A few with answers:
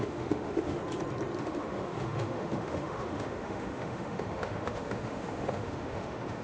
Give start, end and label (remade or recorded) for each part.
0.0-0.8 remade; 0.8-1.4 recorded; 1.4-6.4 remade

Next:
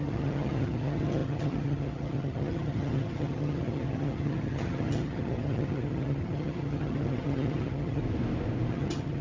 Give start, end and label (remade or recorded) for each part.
0.0-8.0 remade; 8.0-8.7 recorded; 8.7-9.2 remade

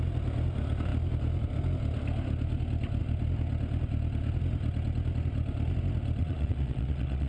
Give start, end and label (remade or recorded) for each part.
0.0-6.2 recorded; 6.2-7.3 remade